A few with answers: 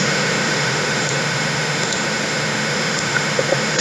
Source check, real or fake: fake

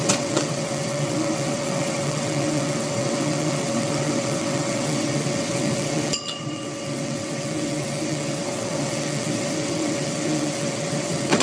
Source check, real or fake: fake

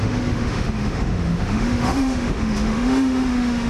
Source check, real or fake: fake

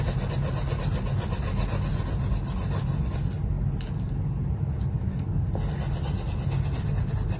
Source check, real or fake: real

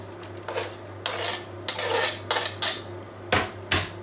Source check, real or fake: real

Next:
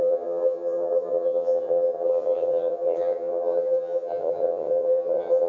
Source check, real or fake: fake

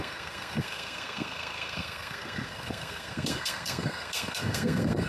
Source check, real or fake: fake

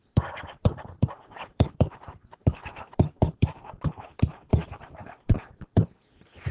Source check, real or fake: fake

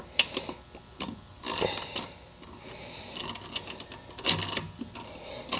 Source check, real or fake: real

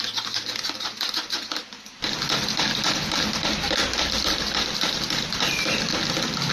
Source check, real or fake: real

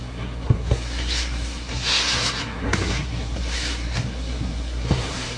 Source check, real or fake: fake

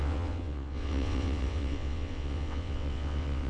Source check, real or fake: fake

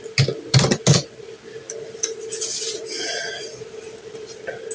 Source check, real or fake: real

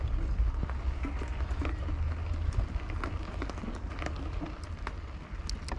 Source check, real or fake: real